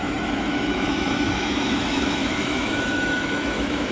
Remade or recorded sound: remade